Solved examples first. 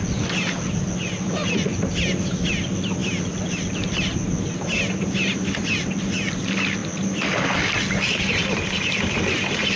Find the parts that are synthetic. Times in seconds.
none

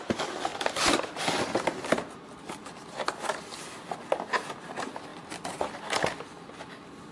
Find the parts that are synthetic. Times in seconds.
none

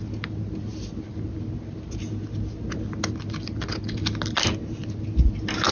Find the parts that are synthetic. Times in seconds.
none